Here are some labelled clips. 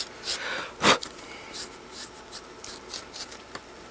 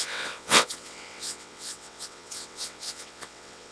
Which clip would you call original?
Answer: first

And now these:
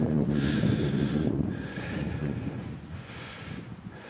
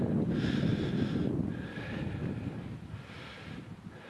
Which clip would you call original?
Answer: second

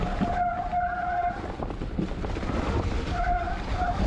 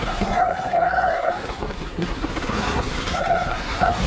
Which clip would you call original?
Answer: first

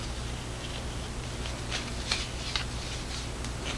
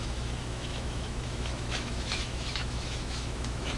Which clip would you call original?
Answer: first